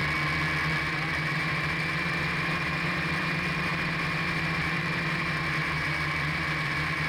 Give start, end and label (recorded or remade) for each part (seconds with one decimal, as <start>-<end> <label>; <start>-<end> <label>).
0.0-0.8 recorded; 0.8-7.1 remade